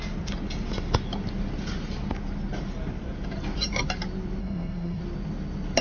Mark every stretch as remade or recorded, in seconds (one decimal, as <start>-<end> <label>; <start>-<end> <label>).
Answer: 0.0-4.4 recorded; 4.4-5.0 remade; 5.0-5.8 recorded